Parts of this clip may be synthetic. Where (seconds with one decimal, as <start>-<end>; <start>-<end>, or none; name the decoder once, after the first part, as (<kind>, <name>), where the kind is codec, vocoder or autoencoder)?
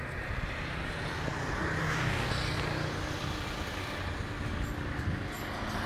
1.8-2.3 (codec, DAC)